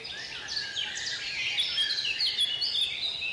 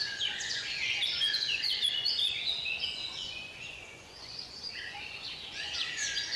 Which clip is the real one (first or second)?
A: first